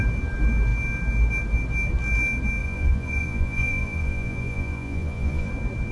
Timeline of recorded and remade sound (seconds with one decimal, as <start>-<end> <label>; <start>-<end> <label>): 0.0-2.6 recorded; 2.6-5.5 remade; 5.5-5.9 recorded